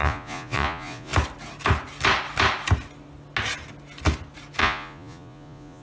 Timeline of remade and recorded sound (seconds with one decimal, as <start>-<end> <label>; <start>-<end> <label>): 0.0-1.1 remade; 1.1-4.6 recorded; 4.6-5.8 remade